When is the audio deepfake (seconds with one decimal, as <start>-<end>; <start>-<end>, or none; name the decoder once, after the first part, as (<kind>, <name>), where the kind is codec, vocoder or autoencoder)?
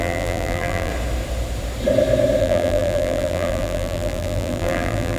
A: 0.0-0.9 (vocoder, BigVGAN v2); 2.4-5.2